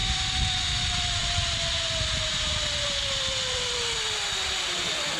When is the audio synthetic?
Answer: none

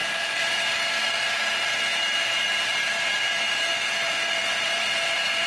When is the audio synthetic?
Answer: 0.0-0.6; 1.9-5.5

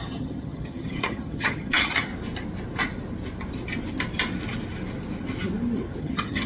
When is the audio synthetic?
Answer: 0.0-2.1; 6.0-6.5

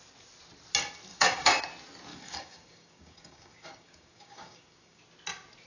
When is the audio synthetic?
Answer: 1.1-1.6; 2.1-5.0

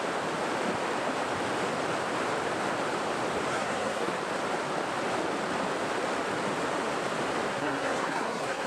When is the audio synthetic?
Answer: 3.5-4.1; 7.5-8.7

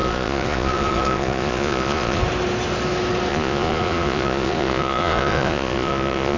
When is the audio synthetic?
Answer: 0.0-2.2; 3.3-6.4